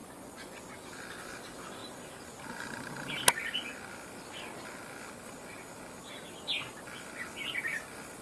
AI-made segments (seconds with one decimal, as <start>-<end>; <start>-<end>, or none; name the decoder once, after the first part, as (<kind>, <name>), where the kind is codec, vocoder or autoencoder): 0.0-0.7 (vocoder, Vocos)